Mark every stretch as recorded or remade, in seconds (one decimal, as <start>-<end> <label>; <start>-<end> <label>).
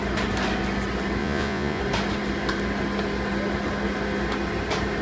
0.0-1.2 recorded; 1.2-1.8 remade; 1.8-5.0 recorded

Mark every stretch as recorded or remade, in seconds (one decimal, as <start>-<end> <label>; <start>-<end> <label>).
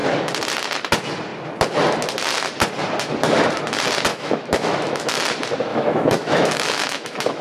0.0-4.1 recorded; 4.1-5.2 remade; 5.2-5.7 recorded; 5.7-7.4 remade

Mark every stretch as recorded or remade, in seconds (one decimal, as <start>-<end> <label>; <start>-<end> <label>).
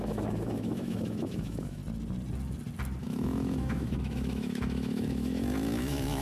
0.0-1.8 remade; 1.8-3.0 recorded; 3.0-6.2 remade